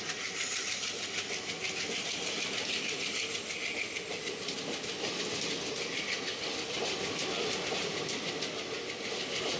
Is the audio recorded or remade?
recorded